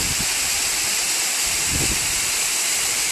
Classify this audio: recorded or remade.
recorded